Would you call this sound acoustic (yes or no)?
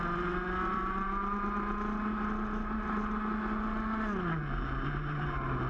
yes